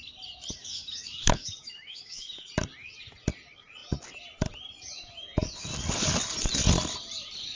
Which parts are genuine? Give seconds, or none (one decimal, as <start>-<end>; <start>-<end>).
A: 0.0-0.6; 2.5-7.6

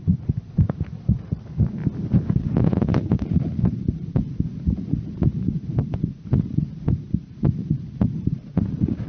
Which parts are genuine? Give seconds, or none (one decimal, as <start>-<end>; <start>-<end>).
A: 1.8-2.6

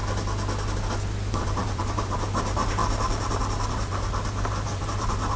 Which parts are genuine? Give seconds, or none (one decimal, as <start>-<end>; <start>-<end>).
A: 0.0-1.3

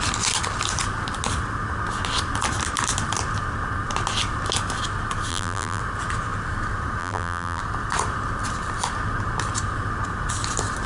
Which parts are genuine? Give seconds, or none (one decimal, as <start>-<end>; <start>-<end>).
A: 0.0-5.3; 5.8-7.0; 7.6-10.9

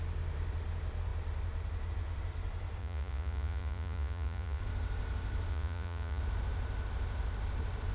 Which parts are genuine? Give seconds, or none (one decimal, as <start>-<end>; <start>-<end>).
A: 0.0-2.8; 4.6-5.5; 6.2-7.9